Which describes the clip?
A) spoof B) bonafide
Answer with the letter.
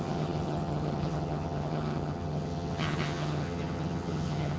A